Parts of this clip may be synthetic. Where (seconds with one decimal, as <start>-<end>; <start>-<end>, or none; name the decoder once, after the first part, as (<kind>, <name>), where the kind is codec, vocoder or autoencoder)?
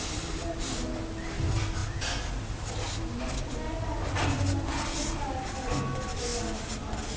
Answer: none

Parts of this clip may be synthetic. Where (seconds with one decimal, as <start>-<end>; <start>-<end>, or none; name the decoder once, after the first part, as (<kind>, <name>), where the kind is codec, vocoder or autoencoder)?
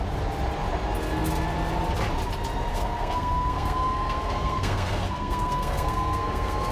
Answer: 2.7-6.7 (codec, SNAC)